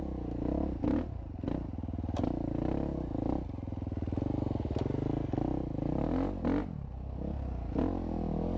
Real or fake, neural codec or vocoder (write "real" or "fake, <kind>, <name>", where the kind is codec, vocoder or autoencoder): real